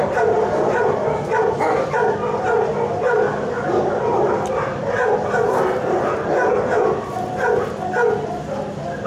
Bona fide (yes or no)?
yes